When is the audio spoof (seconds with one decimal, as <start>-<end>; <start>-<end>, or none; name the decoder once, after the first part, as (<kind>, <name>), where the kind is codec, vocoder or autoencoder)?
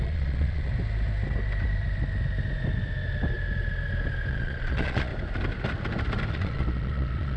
0.0-0.7 (vocoder, Vocos); 4.3-5.1; 6.3-7.4